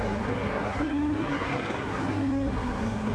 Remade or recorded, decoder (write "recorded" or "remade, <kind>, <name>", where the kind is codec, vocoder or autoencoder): remade, codec, SNAC